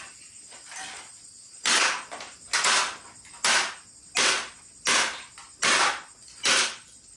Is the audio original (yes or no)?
yes